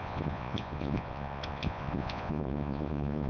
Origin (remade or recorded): remade